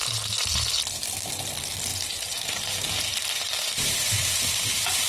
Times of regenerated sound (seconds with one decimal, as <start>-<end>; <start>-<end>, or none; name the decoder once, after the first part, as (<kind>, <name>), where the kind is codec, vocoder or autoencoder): 1.9-5.1 (vocoder, BigVGAN v2)